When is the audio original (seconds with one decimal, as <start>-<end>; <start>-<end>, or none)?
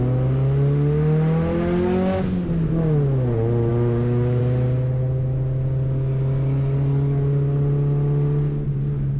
0.0-3.7; 4.4-9.2